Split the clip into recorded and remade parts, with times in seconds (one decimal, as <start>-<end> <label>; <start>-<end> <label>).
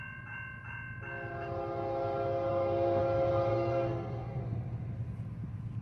0.0-2.5 recorded; 2.5-3.0 remade; 3.0-3.5 recorded; 3.5-4.4 remade; 4.4-5.8 recorded